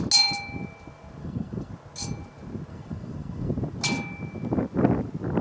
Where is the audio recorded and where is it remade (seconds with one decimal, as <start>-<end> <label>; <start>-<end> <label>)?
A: 0.0-1.2 recorded; 1.2-1.7 remade; 1.7-2.7 recorded; 2.7-3.5 remade; 3.5-5.4 recorded